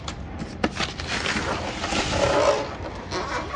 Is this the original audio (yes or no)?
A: yes